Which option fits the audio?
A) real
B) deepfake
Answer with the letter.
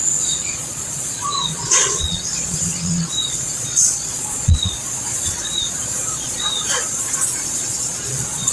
B